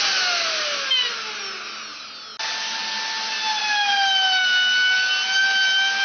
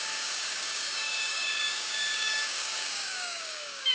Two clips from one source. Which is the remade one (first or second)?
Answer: second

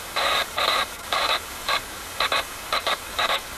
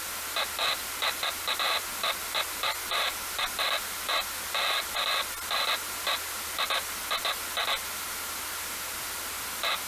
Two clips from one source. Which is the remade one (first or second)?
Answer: first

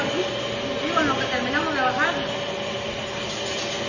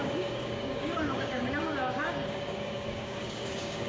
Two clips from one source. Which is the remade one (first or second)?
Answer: second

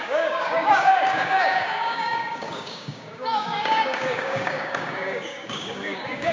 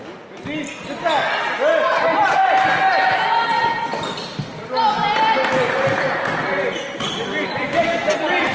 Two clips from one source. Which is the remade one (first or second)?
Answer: first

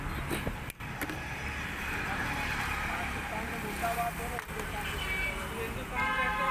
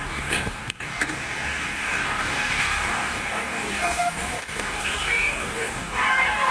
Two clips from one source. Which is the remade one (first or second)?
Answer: second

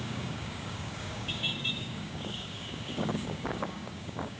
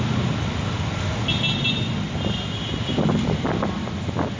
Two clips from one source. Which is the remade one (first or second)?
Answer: first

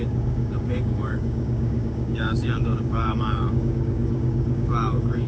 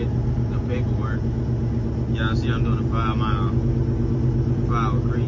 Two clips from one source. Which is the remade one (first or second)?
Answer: first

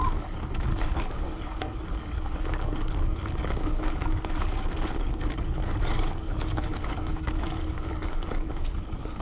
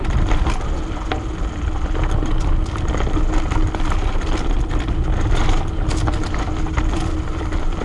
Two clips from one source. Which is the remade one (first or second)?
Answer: first